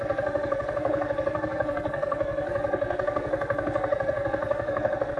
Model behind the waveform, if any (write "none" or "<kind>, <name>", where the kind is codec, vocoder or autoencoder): codec, SNAC